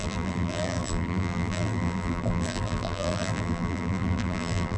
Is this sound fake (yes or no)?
yes